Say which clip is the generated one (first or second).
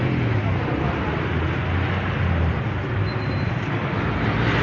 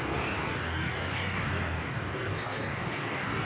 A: second